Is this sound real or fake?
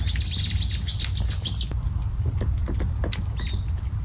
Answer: real